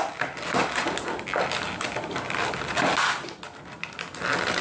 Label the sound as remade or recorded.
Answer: recorded